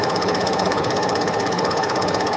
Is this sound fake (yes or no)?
yes